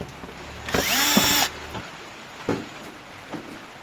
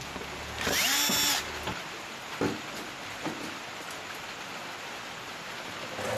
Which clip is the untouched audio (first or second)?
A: second